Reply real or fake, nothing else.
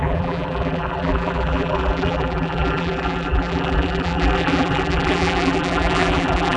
fake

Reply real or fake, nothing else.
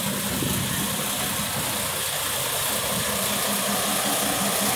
real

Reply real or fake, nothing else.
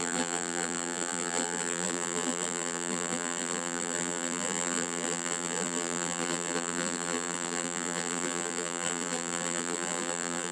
fake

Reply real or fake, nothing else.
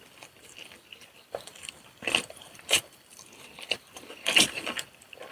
fake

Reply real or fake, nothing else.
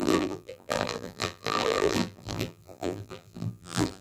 fake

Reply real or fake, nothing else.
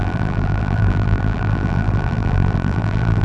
fake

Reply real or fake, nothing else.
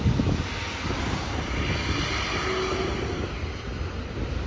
real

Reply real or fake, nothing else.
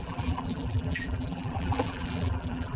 fake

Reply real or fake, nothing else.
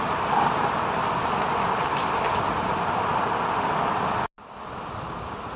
real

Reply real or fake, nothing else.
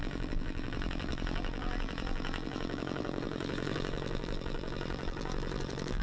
fake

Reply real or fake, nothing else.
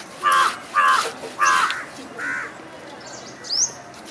real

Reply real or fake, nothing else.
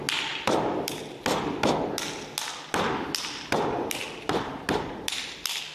real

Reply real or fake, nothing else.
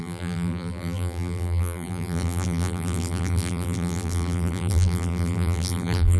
fake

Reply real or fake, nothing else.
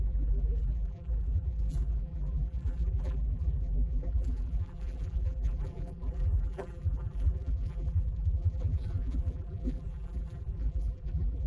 fake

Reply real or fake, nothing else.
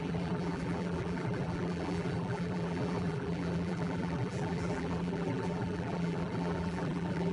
fake